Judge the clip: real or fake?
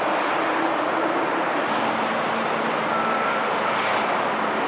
real